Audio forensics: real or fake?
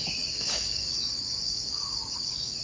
fake